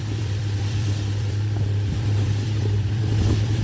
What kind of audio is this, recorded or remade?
remade